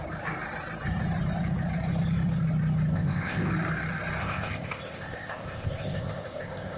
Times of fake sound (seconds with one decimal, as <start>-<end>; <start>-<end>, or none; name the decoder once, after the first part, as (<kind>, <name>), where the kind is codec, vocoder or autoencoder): 2.9-3.5 (codec, ZipCodec); 4.2-6.8